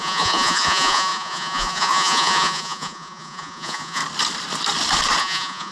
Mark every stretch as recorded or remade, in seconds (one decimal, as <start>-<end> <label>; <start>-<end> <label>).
0.0-4.0 remade; 4.0-5.2 recorded; 5.2-5.7 remade